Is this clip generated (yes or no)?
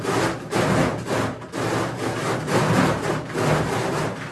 no